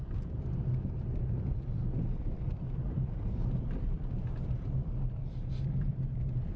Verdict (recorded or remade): remade